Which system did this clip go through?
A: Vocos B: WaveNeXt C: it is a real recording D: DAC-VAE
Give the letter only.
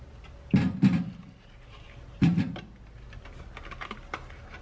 C